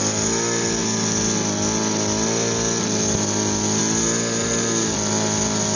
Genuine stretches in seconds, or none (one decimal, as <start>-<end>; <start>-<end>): 0.0-5.8

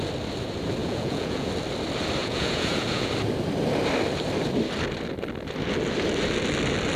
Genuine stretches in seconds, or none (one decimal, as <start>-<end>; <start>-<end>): 0.0-0.8; 1.5-2.2; 3.1-7.0

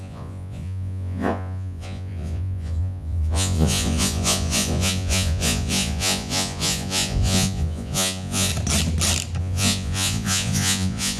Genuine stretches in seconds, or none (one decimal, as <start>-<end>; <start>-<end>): 8.5-9.4

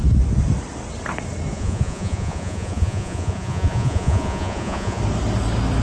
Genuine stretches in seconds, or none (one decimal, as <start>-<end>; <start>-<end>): 0.0-1.5; 5.0-5.8

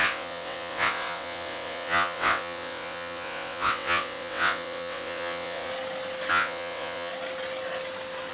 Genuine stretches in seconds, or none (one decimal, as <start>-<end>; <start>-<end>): 5.7-6.3; 7.1-8.3

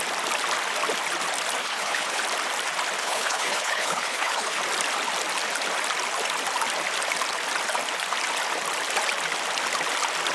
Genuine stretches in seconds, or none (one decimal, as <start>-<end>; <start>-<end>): 0.0-1.6; 2.2-3.0; 4.6-10.3

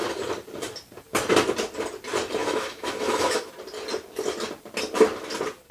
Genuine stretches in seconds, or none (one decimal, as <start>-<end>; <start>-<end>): 0.0-2.4; 3.5-5.7

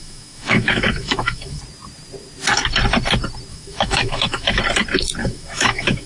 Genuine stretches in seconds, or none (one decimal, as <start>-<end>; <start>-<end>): 1.6-3.5; 4.6-5.2